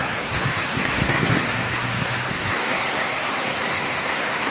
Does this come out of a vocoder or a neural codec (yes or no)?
yes